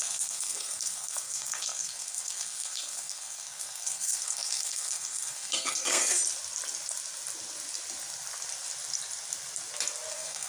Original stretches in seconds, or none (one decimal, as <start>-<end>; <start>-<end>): 6.2-10.1